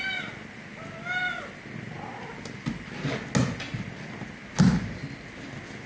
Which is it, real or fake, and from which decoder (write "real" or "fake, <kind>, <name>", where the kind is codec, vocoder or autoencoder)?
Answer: real